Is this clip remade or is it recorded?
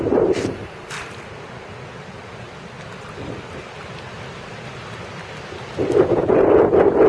recorded